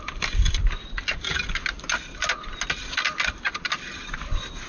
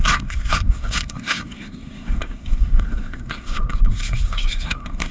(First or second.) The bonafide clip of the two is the first